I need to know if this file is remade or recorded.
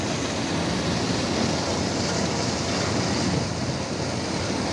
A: recorded